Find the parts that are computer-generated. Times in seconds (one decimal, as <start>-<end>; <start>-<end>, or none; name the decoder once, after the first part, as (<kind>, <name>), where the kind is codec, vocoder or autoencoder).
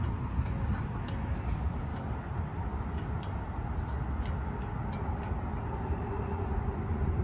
6.1-7.2 (vocoder, Vocos)